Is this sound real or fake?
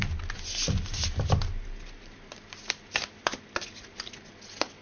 real